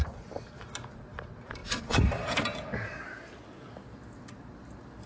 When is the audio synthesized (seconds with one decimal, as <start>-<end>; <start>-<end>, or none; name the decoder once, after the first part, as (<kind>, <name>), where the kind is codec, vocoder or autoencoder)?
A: 0.0-0.7 (vocoder, BigVGAN v2); 1.6-2.4